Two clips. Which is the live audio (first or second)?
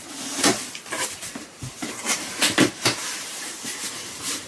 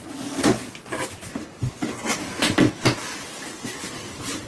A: second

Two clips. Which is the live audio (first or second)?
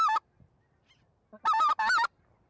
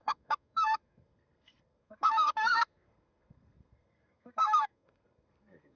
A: first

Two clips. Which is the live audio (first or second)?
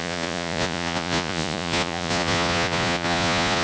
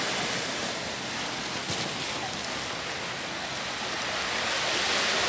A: second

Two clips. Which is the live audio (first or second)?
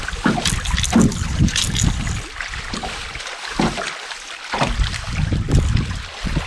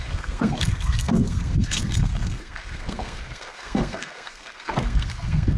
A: first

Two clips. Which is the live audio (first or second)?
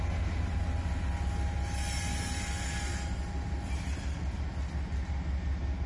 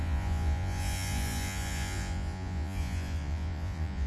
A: first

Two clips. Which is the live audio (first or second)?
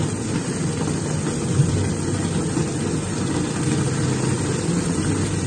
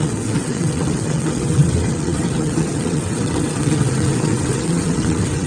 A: first